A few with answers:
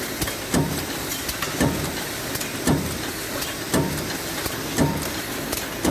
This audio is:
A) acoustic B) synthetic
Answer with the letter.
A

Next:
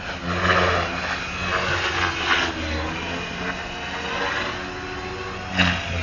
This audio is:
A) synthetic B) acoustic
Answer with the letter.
B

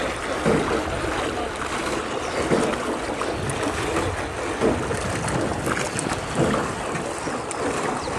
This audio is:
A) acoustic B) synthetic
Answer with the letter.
A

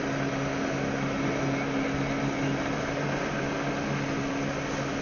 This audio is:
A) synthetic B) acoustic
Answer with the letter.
B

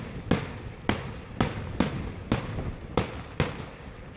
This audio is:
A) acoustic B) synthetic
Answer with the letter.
A